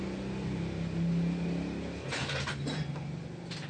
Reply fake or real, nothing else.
real